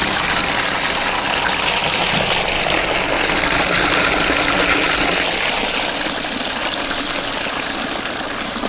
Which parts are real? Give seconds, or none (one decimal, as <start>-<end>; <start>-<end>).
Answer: 0.0-8.7